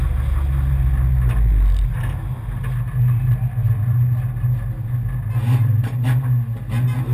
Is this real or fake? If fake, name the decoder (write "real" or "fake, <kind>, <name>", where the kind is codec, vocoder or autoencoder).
real